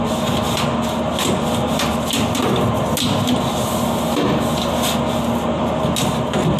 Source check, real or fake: real